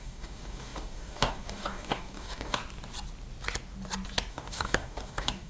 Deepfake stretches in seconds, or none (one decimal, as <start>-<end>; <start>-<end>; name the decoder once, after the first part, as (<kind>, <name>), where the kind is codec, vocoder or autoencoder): 0.0-2.6 (codec, DAC); 4.3-5.5